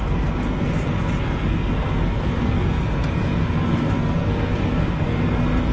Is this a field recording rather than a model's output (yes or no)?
no